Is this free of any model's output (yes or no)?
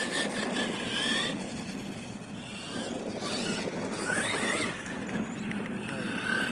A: yes